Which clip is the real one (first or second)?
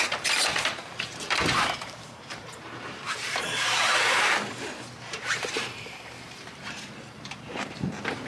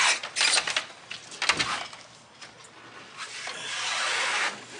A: second